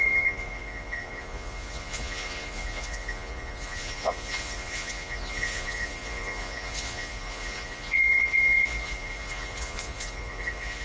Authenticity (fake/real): fake